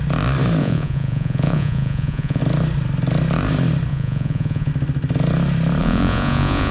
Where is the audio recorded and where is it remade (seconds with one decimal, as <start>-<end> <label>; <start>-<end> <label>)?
0.0-0.6 recorded; 0.6-2.4 remade; 2.4-3.9 recorded; 3.9-4.7 remade; 4.7-5.8 recorded; 5.8-6.7 remade